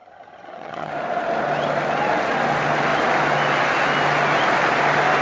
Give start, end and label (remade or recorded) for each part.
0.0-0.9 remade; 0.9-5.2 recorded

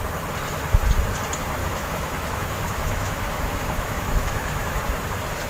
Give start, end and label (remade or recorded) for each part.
0.0-1.6 recorded; 1.6-4.8 remade; 4.8-5.5 recorded

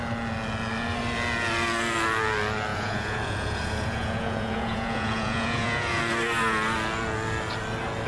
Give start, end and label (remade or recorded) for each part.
0.0-2.7 recorded; 2.7-6.0 remade; 6.0-8.1 recorded

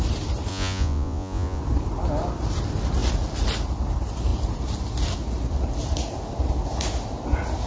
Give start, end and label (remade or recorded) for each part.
0.0-0.5 recorded; 0.5-1.6 remade; 1.6-7.7 recorded

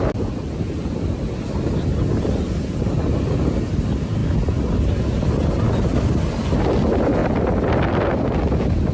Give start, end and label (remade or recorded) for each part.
0.0-8.9 recorded

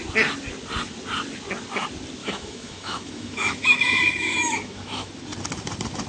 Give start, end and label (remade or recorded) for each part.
0.0-2.2 recorded; 2.2-5.1 remade; 5.1-6.1 recorded

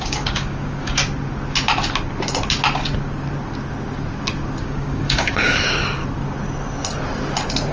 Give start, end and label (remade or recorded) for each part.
0.0-1.0 remade; 1.0-4.6 recorded; 4.6-6.0 remade; 6.0-7.7 recorded

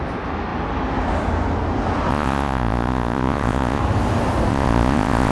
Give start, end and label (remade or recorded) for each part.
0.0-2.1 recorded; 2.1-3.8 remade; 3.8-4.5 recorded; 4.5-5.3 remade